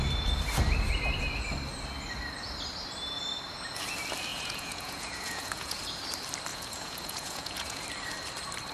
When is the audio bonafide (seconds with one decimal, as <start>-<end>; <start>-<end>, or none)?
0.0-4.3; 5.8-6.5; 7.8-8.7